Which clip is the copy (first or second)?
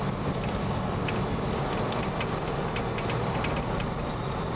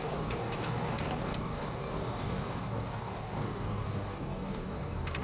second